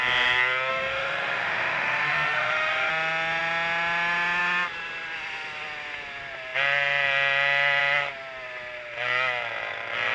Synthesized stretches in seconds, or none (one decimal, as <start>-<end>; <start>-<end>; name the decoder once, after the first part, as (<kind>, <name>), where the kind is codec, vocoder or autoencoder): 0.7-2.9 (autoencoder, DAC-VAE)